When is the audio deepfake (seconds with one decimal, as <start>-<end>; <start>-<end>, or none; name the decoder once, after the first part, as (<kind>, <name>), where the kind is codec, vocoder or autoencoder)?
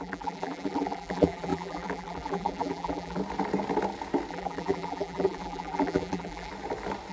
0.0-3.2 (vocoder, BigVGAN v2); 4.3-6.5